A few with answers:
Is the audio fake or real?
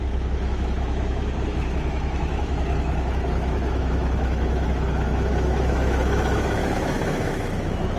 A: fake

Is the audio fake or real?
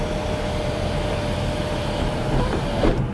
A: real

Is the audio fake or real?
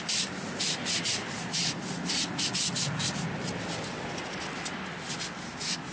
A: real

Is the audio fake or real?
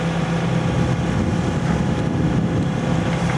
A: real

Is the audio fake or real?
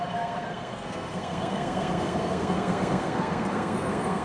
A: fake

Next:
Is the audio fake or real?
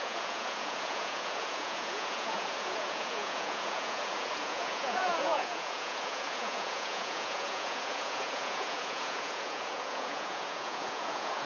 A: fake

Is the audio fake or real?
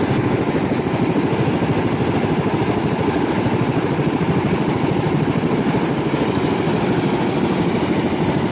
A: real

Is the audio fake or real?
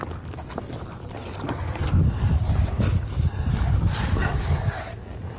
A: real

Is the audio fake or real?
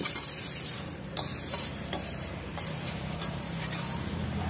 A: fake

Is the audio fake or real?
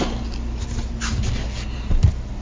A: real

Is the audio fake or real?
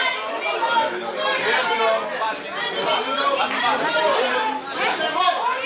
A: real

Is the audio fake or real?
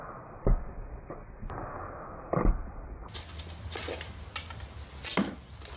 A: real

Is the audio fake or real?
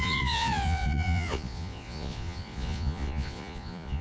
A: fake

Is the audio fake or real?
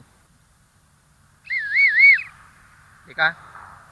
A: real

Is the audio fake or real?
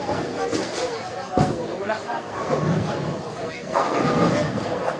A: fake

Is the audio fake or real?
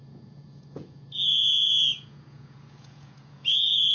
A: fake